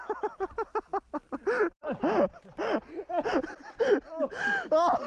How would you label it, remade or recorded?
recorded